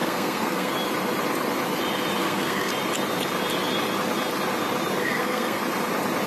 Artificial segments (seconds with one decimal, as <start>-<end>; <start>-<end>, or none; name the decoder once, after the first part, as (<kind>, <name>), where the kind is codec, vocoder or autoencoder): 0.0-0.7 (codec, SNAC); 2.2-2.7; 5.0-5.6